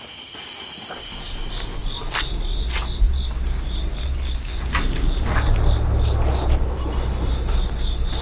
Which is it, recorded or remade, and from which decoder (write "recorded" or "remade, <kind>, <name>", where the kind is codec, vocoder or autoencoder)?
recorded